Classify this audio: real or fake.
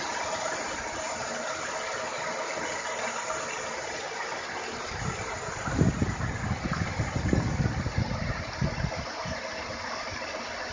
real